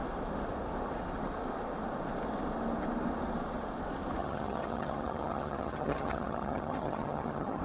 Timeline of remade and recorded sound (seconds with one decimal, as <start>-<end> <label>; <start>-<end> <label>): 0.0-4.2 recorded; 4.2-7.6 remade